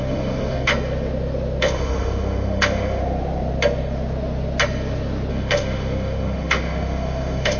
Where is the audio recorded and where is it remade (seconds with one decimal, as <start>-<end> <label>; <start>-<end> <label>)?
0.0-0.7 remade; 0.7-1.6 recorded; 1.6-3.0 remade; 3.0-5.3 recorded; 5.3-7.6 remade